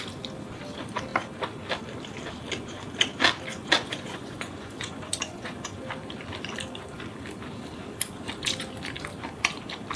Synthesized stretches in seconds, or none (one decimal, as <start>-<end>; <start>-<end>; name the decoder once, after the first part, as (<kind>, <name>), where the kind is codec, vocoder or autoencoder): 3.5-5.8 (vocoder, Vocos)